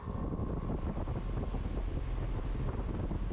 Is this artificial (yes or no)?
no